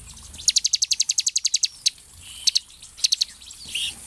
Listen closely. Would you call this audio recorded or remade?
recorded